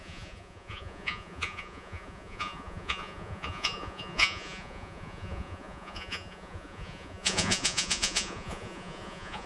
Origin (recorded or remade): remade